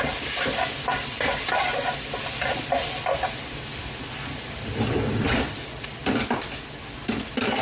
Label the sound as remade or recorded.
recorded